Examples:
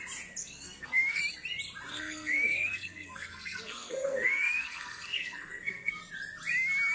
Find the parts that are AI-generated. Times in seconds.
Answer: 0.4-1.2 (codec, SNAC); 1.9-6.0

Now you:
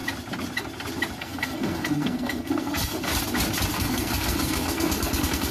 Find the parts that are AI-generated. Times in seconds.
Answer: 1.2-3.1 (codec, SNAC); 3.7-5.5

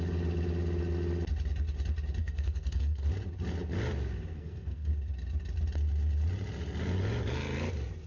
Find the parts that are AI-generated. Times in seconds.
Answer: 2.2-3.1 (codec, SNAC); 4.3-4.9

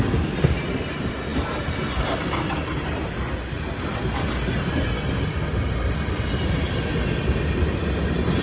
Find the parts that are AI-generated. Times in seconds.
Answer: none

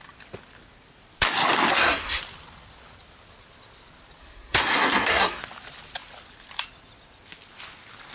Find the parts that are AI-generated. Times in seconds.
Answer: 1.7-2.2 (codec, SNAC); 4.2-5.4

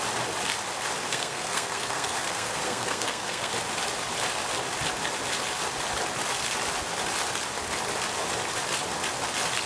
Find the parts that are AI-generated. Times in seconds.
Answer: 1.0-3.5 (codec, SNAC)